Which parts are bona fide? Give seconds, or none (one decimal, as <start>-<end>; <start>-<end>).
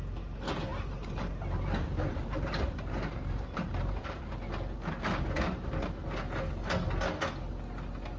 0.0-0.7; 4.2-8.2